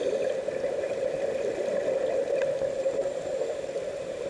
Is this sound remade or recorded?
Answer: recorded